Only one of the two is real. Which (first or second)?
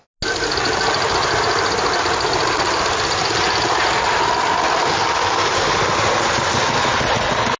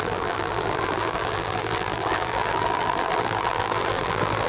first